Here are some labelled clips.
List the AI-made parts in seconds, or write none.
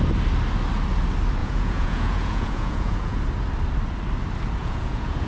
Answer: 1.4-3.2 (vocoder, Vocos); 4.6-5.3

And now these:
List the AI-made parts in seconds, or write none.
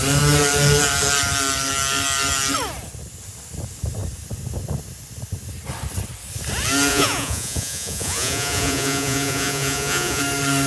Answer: 6.9-10.2 (vocoder, Vocos)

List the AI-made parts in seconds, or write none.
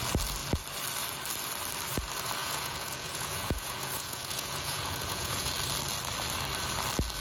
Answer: 2.4-5.5 (vocoder, Vocos)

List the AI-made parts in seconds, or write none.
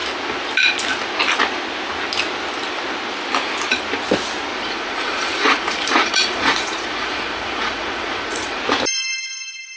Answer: 4.5-8.6 (vocoder, Vocos)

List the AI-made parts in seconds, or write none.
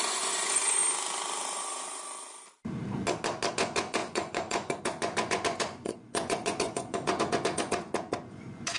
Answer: 0.0-0.8 (vocoder, Vocos); 3.5-8.8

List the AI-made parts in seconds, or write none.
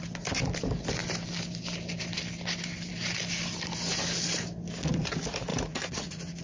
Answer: 5.5-6.4 (vocoder, Vocos)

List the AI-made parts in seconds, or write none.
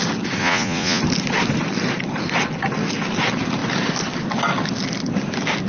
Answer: 0.4-1.0 (vocoder, Vocos)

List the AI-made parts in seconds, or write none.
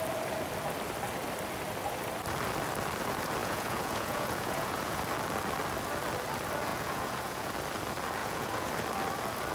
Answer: 3.4-5.0 (vocoder, Vocos); 6.7-7.5; 8.2-8.7